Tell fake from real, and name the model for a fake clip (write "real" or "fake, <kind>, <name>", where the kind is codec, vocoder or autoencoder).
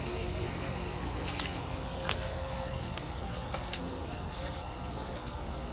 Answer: fake, codec, SNAC